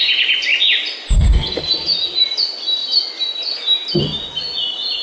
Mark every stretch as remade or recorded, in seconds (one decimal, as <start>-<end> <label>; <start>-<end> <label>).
0.0-5.0 recorded